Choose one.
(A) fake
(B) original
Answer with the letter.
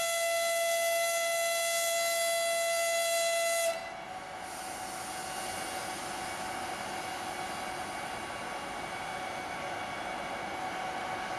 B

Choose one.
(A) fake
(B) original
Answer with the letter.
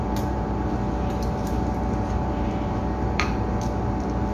A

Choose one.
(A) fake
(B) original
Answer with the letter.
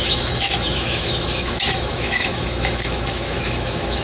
A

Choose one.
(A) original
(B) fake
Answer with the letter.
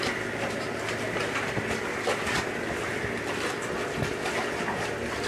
A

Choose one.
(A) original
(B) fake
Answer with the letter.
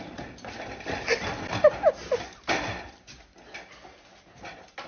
A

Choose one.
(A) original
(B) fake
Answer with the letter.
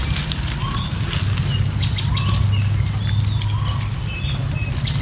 A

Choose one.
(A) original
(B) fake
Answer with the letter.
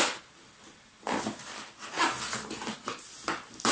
B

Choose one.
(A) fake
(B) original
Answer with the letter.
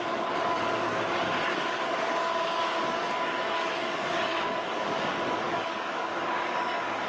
A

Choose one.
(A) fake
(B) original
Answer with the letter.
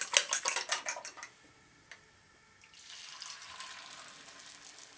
B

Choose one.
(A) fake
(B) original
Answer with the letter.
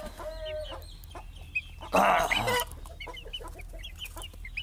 B